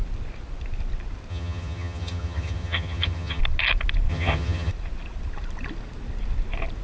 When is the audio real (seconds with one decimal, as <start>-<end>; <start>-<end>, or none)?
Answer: 0.0-1.3; 3.4-4.1; 4.7-6.8